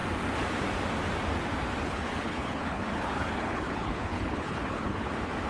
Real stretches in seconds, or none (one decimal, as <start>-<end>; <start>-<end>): 0.0-1.8; 5.1-5.5